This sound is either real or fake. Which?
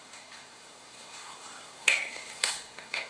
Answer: fake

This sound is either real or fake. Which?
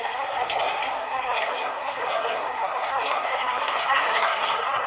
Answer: fake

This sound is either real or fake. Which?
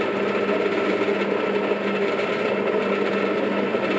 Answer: real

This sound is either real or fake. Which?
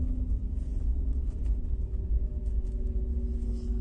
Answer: real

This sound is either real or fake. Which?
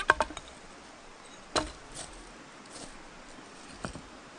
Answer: real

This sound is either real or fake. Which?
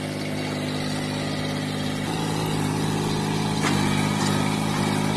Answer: real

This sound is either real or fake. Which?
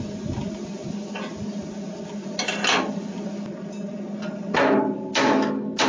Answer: real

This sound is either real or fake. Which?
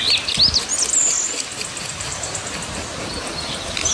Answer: real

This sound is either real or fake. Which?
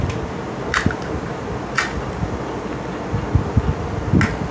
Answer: real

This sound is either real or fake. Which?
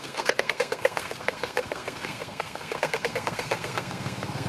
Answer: fake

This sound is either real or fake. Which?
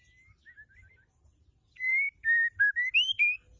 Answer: real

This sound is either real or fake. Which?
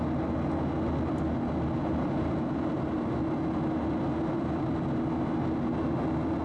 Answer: real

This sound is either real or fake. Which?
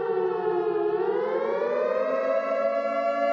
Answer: real